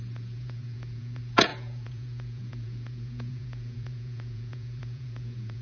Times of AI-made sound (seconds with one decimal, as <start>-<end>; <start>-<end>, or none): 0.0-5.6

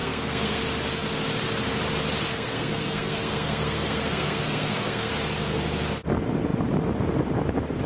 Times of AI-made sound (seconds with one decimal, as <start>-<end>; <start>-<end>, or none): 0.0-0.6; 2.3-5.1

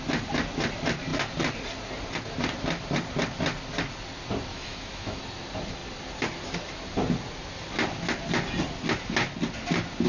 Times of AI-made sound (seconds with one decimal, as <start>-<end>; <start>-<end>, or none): 4.5-5.2